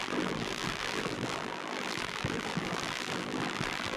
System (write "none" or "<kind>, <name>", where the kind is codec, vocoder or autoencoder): vocoder, BigVGAN v2